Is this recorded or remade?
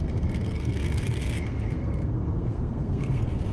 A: remade